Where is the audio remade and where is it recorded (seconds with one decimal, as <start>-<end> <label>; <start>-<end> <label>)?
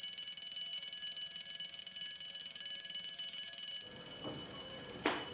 0.0-2.4 recorded; 2.4-3.7 remade; 3.7-4.4 recorded; 4.4-5.3 remade